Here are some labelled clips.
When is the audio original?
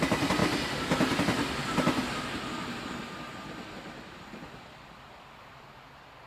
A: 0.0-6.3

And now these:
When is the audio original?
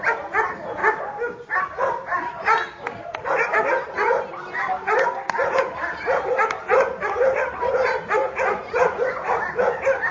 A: 0.0-8.2; 9.4-10.1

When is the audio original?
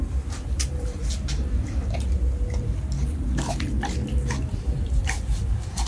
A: 1.0-4.5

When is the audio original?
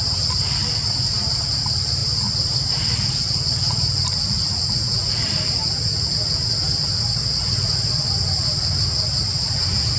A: 0.0-2.0; 4.7-10.0